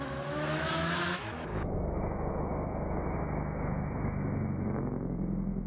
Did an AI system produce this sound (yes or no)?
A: yes